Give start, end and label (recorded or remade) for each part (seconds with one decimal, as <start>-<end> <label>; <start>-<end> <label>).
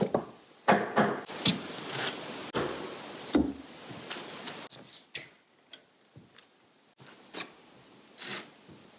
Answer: 0.0-9.0 recorded